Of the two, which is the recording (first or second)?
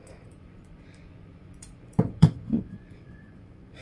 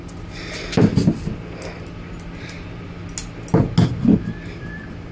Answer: second